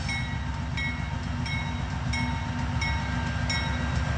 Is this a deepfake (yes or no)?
no